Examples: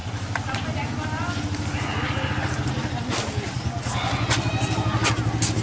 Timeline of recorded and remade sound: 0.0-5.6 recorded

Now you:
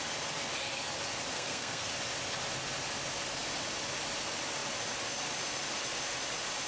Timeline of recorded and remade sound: 0.0-1.3 recorded; 1.3-1.9 remade; 1.9-6.7 recorded